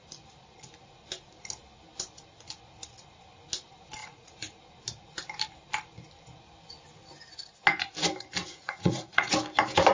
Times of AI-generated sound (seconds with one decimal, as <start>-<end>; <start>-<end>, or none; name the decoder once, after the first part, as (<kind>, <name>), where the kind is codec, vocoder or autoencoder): 4.0-4.6 (vocoder, Vocos); 8.4-9.3